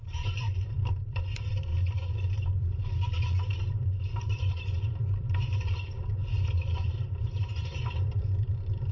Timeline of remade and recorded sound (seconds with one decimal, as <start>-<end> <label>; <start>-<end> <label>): 0.0-1.7 remade; 1.7-3.7 recorded; 3.7-8.9 remade